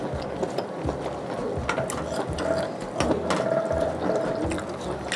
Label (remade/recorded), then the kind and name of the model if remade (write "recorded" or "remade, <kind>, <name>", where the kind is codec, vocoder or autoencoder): recorded